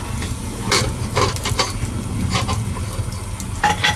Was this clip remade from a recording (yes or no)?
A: no